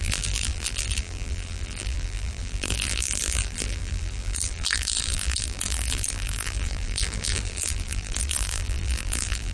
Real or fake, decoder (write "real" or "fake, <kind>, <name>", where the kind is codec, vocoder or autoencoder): fake, vocoder, BigVGAN v2